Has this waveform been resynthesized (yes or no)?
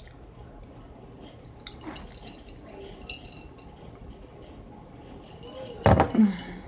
no